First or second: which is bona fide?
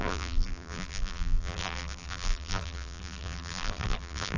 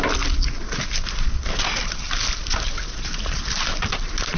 second